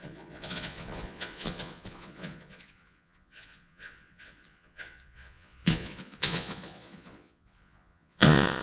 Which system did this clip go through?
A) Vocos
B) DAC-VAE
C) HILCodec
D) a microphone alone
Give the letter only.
A